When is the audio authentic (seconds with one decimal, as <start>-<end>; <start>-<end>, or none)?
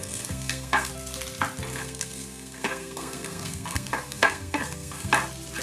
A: 0.9-1.7; 5.1-5.6